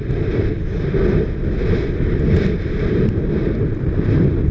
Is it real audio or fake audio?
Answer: real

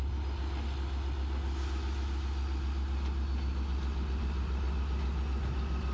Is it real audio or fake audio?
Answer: real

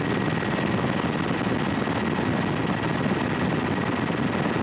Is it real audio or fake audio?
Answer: real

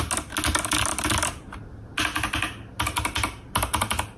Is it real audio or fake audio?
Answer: real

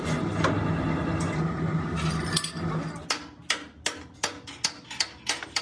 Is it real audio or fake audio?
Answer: real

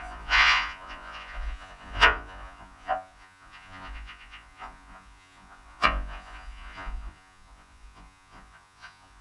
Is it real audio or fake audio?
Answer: fake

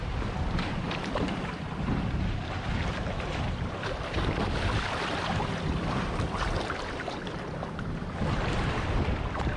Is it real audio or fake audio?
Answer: fake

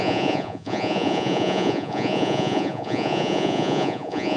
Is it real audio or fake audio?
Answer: fake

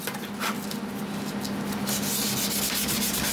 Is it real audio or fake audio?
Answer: real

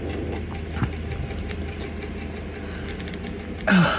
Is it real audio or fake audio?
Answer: real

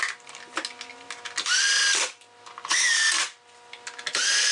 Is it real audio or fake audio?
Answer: real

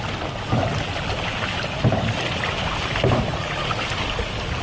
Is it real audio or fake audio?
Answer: real